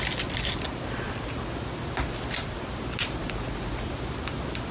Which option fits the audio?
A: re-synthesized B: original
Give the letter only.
B